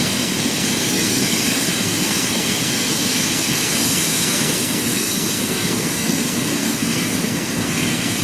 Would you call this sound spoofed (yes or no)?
yes